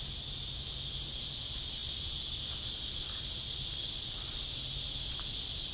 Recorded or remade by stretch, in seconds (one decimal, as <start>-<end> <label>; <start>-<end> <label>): 0.0-5.7 recorded